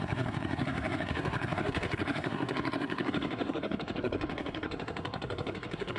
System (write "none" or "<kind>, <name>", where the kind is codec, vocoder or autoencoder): codec, SNAC